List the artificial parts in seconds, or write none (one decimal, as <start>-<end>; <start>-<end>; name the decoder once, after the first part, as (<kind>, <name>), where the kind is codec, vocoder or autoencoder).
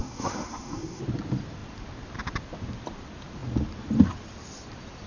0.0-1.0 (codec, SNAC)